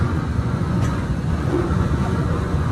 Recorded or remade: remade